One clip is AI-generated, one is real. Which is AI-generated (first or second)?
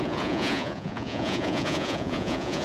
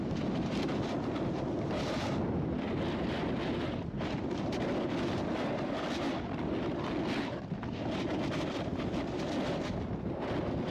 first